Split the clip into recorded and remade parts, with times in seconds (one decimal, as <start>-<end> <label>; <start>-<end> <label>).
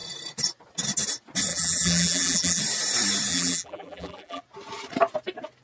0.0-1.5 recorded; 1.5-2.6 remade; 2.6-3.3 recorded; 3.3-4.4 remade; 4.4-5.6 recorded